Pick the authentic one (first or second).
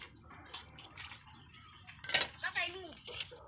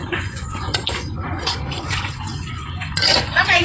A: first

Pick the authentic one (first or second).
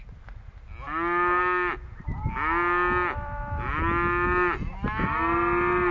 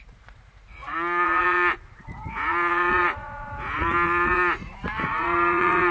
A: first